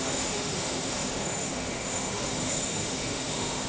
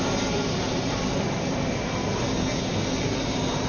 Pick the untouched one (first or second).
second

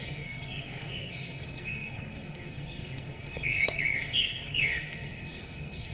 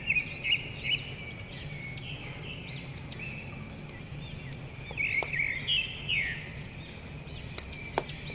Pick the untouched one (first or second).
second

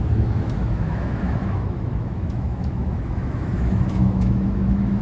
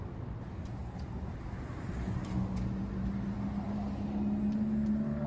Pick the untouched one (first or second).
second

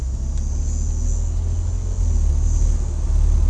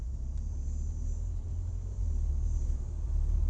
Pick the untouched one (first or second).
first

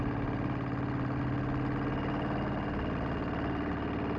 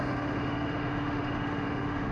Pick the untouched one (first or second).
first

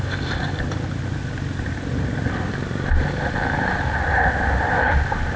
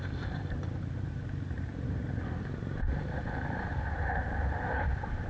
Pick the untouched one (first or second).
first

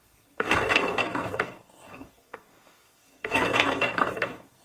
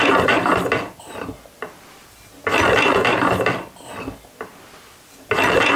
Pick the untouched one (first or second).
second